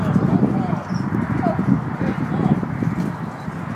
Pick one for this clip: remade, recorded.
recorded